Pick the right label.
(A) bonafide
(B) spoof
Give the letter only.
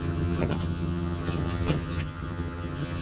B